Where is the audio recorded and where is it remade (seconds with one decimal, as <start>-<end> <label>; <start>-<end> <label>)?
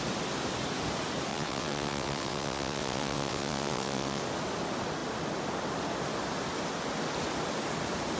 0.0-1.3 recorded; 1.3-4.2 remade; 4.2-8.2 recorded